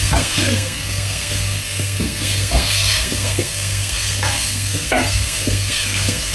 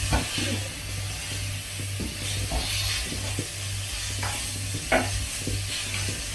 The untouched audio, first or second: second